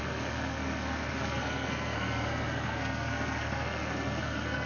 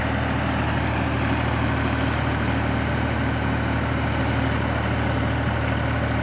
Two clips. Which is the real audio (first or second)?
second